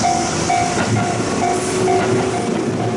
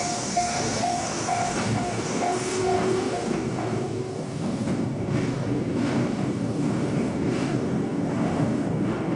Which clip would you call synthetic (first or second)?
second